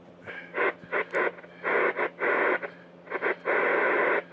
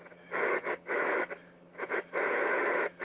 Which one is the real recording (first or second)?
first